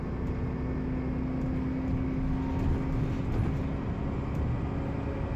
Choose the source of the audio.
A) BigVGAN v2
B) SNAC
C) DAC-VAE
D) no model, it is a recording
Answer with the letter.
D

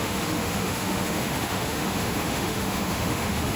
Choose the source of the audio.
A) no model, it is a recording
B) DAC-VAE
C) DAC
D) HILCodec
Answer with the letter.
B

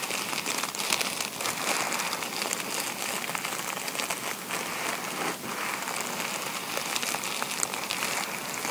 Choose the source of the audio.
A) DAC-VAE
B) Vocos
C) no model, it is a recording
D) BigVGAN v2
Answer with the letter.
C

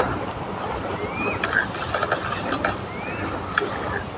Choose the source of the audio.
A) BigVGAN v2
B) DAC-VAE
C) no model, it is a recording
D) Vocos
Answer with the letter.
C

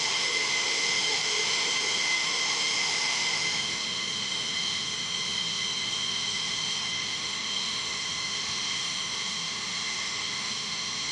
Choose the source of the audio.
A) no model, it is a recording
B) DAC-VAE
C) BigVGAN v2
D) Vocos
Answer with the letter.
B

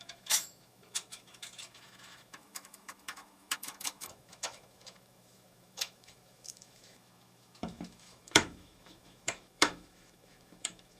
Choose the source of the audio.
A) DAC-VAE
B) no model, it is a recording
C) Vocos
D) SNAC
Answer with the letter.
A